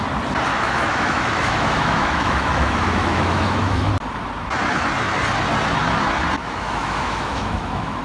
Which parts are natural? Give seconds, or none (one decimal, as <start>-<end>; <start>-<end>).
0.0-0.5; 3.9-6.4